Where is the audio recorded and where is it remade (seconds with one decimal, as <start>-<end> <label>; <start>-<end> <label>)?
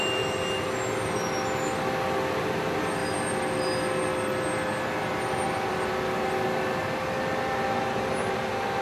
0.0-8.8 recorded